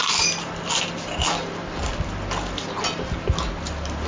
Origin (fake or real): real